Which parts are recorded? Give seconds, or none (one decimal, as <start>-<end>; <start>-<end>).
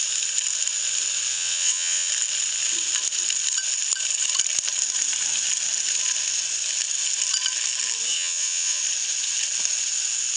0.0-1.3; 2.1-8.1; 8.8-10.4